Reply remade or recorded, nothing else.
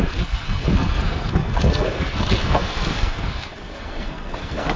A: remade